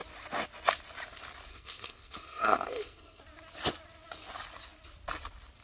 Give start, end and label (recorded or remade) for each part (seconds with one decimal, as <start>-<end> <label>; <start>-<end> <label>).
0.0-1.5 recorded; 1.5-3.2 remade; 3.2-5.6 recorded